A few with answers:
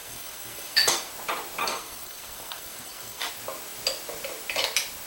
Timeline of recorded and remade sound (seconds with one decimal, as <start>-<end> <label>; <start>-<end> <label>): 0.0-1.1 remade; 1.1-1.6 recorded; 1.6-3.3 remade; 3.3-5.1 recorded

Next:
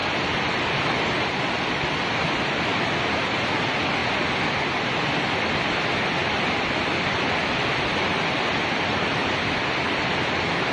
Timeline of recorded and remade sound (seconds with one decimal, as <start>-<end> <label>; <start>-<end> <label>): 0.0-1.8 remade; 1.8-6.2 recorded; 6.2-9.3 remade; 9.3-10.7 recorded

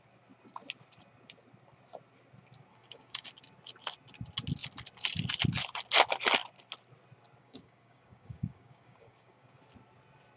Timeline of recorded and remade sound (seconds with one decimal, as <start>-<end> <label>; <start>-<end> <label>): 0.0-2.7 recorded; 2.7-3.3 remade; 3.3-7.4 recorded; 7.4-9.6 remade; 9.6-10.4 recorded